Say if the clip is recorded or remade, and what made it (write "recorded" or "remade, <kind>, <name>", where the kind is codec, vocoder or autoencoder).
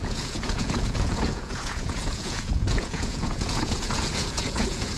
remade, vocoder, Vocos